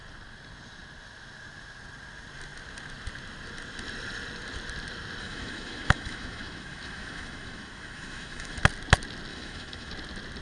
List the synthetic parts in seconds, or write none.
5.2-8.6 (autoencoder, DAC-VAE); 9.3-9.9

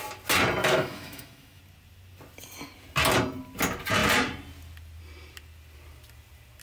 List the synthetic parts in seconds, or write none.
0.6-1.6 (autoencoder, DAC-VAE)

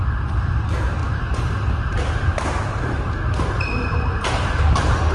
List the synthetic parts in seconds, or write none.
none

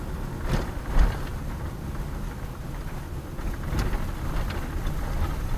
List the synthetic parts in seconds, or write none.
0.0-1.3 (vocoder, BigVGAN v2); 4.7-5.6

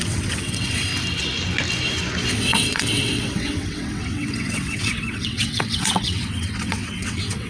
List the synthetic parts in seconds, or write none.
0.0-0.9 (vocoder, WaveNeXt); 2.3-7.5

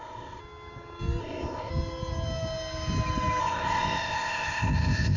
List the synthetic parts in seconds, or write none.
0.0-0.4 (codec, ZipCodec); 1.2-1.7; 3.4-5.2